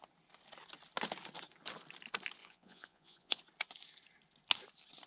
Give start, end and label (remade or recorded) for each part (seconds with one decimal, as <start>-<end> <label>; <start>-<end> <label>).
0.0-2.4 recorded; 2.4-3.4 remade; 3.4-5.1 recorded